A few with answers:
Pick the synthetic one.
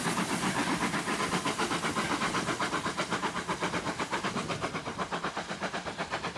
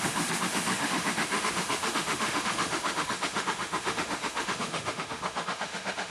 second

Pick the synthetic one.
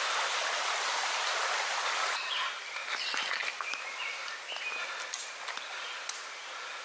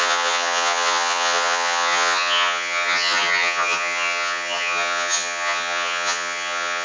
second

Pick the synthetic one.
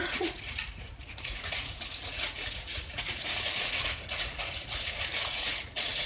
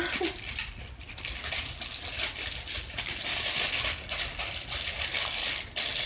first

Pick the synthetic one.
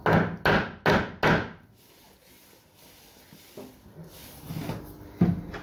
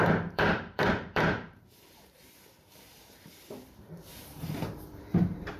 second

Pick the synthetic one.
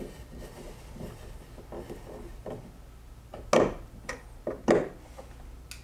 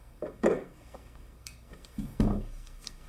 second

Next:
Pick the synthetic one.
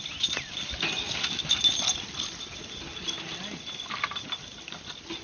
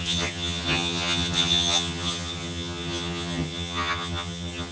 second